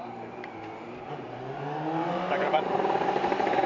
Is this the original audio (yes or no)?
no